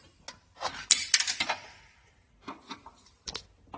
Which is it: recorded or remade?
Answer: recorded